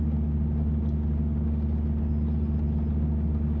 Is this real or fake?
real